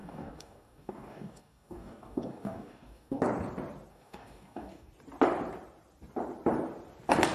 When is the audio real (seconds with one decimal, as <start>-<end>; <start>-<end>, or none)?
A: 3.2-3.9; 4.9-7.3